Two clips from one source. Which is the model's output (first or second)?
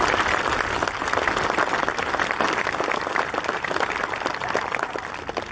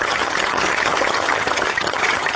second